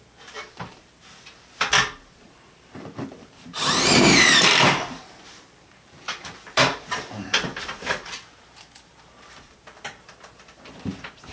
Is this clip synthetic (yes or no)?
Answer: yes